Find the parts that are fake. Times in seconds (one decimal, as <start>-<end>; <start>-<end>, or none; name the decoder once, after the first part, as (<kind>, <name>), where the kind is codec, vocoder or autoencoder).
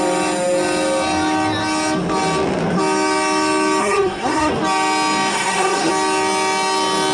3.8-4.5 (codec, SNAC); 5.3-5.9